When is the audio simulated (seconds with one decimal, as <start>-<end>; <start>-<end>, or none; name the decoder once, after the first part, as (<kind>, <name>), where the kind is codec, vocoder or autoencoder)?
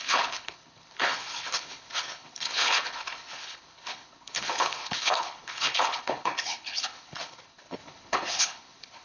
0.0-9.0 (codec, HILCodec)